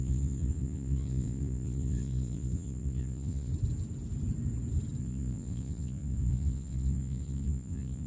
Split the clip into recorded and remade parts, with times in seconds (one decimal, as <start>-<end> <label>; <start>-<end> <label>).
0.0-3.5 remade; 3.5-5.0 recorded; 5.0-8.1 remade